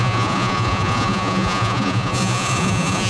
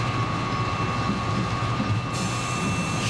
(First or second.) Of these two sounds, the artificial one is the first